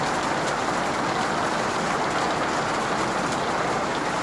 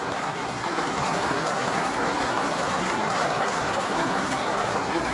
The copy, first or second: second